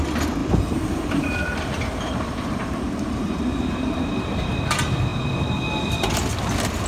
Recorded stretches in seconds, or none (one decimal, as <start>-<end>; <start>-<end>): 0.0-0.4; 4.5-6.9